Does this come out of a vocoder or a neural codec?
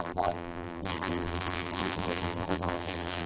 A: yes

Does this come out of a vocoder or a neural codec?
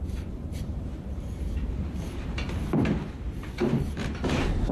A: yes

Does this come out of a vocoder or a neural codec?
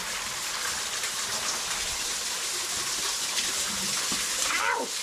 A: no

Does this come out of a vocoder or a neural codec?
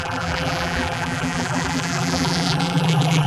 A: yes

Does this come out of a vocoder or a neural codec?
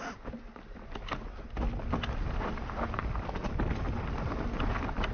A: no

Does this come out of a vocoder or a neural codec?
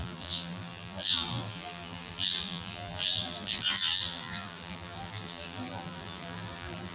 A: yes